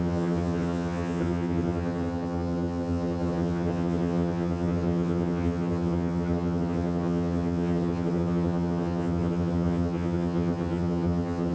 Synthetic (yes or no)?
yes